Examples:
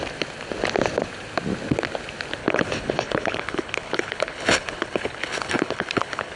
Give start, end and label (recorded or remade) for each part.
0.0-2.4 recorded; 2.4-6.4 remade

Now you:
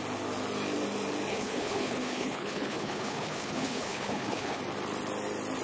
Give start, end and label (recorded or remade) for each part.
0.0-1.3 recorded; 1.3-4.6 remade; 4.6-5.6 recorded

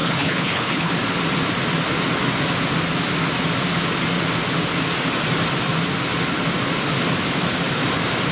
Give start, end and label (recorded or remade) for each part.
0.0-0.9 remade; 0.9-8.3 recorded

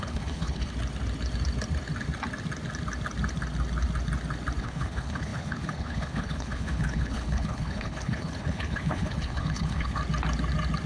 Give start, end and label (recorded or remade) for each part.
0.0-0.7 remade; 0.7-4.6 recorded; 4.6-10.0 remade; 10.0-10.9 recorded

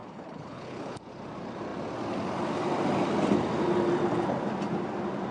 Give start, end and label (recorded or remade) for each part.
0.0-1.0 remade; 1.0-5.3 recorded

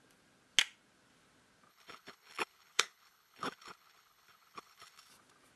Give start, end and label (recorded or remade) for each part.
0.0-1.7 recorded; 1.7-5.1 remade; 5.1-5.6 recorded